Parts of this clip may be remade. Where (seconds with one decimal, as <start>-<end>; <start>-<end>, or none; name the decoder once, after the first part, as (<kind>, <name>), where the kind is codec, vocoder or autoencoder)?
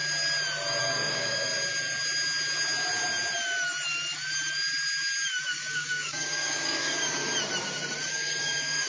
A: 0.8-1.5 (codec, DAC); 5.4-7.2; 8.1-8.9